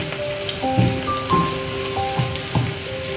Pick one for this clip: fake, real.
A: real